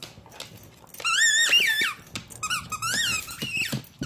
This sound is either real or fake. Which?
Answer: real